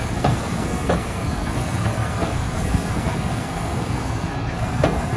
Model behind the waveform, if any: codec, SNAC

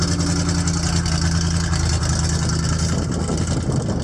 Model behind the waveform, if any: none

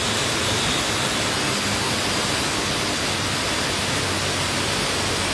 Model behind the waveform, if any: none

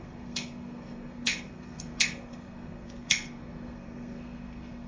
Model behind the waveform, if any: codec, SNAC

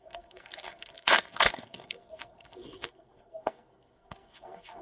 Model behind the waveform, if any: codec, SNAC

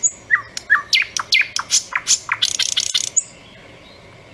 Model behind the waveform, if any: none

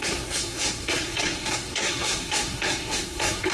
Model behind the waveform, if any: codec, SNAC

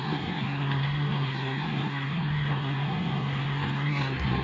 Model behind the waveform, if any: codec, SNAC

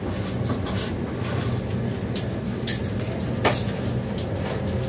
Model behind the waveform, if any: none